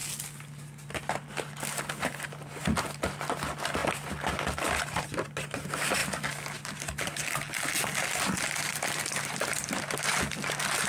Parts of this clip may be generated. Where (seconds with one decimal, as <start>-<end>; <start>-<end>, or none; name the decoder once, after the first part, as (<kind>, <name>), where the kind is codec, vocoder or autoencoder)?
6.0-9.8 (vocoder, BigVGAN v2)